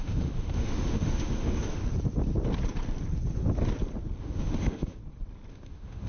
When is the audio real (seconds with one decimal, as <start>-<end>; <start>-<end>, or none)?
1.8-4.2; 5.0-5.5